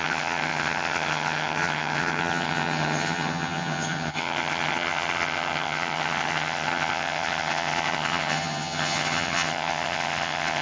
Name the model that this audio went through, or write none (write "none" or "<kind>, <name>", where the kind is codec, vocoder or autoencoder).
vocoder, HiFi-GAN